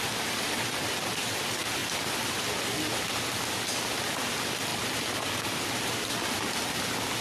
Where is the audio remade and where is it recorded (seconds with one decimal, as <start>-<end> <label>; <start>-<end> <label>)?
0.0-7.2 recorded